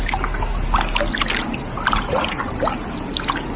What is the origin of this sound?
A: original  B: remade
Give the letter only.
A